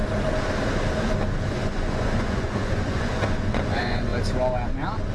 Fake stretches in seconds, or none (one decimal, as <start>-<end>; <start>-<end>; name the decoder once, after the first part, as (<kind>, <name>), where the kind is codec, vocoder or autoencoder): 1.5-4.1 (vocoder, Vocos)